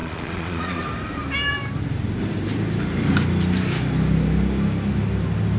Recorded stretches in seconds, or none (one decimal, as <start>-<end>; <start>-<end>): 0.9-5.6